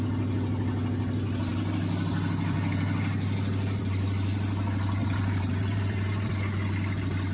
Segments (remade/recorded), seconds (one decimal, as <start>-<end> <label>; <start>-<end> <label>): 0.0-5.0 recorded; 5.0-6.3 remade; 6.3-7.3 recorded